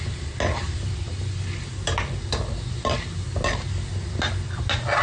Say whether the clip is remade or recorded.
recorded